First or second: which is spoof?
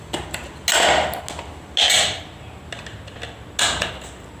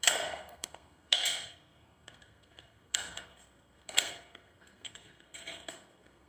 second